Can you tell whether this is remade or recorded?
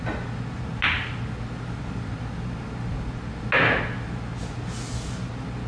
recorded